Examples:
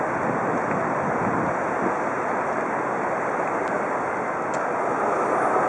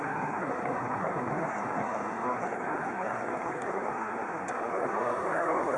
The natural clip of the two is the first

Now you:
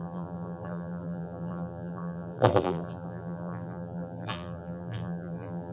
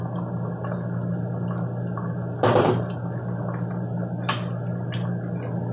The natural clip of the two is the second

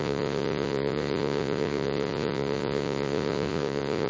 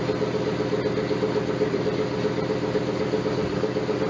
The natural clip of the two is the second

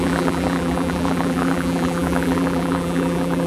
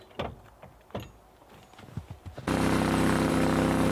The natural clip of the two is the second